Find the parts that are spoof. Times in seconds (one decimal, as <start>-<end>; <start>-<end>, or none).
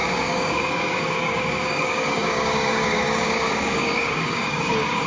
0.0-5.1